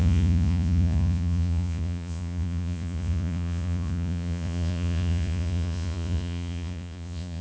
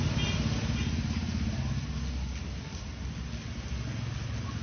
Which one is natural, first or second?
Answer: second